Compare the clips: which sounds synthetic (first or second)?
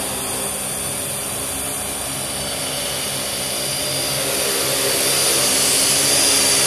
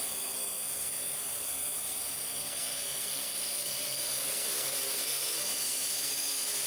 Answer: second